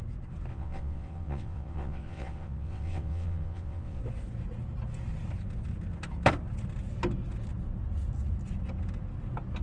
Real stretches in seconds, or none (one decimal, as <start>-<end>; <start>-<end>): 0.0-0.5; 4.0-9.6